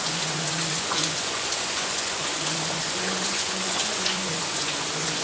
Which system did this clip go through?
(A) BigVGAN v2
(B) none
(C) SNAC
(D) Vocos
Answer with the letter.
D